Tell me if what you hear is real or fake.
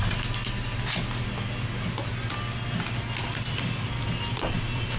real